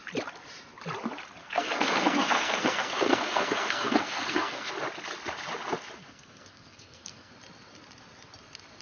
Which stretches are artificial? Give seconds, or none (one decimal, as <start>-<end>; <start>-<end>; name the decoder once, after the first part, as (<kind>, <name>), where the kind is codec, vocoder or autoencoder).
1.4-4.7 (codec, SNAC); 6.0-7.3